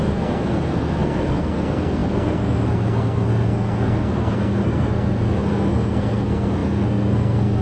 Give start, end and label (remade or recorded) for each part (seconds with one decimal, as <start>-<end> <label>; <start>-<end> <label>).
0.0-7.6 remade